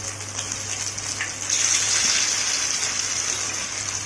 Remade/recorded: recorded